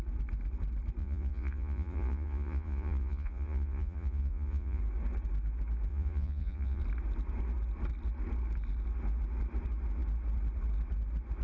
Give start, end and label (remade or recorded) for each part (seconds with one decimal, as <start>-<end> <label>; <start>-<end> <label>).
0.0-1.0 recorded; 1.0-4.8 remade; 4.8-5.9 recorded; 5.9-6.8 remade; 6.8-11.4 recorded